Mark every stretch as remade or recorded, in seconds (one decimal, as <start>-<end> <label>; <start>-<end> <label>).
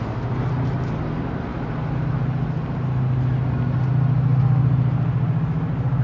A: 0.0-6.0 recorded